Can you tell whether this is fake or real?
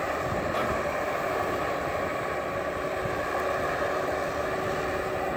real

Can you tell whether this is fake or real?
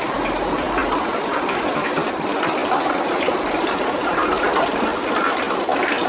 real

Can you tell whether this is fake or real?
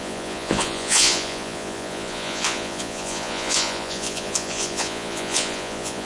fake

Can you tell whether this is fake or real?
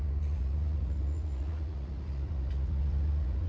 fake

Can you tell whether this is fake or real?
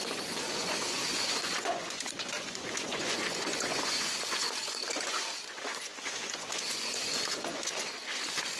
fake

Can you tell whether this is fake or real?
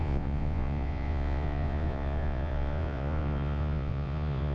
fake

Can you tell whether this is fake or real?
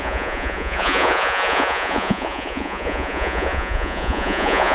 fake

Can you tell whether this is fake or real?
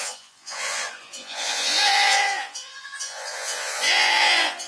fake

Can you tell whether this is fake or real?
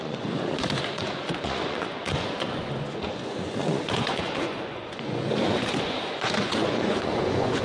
fake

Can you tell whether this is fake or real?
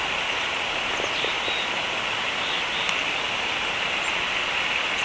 real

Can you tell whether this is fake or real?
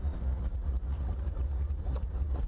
fake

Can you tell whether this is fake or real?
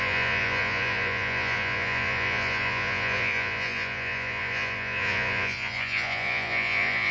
fake